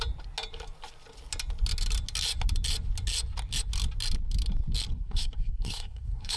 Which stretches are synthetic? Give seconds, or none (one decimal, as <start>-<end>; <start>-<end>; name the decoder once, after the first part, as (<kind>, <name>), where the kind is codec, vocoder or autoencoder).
4.9-6.4 (codec, SNAC)